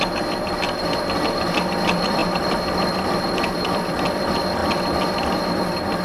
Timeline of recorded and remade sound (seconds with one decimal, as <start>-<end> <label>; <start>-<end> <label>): 0.0-6.0 remade